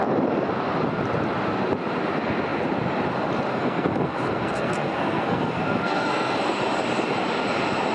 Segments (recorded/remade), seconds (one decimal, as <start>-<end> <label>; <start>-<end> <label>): 0.0-3.5 recorded; 3.5-6.5 remade; 6.5-7.9 recorded